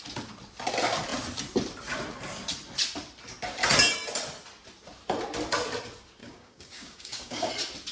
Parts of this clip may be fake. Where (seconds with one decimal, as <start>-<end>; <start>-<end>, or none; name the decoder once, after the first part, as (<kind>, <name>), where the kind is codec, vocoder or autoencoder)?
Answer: 6.2-7.5 (codec, DAC)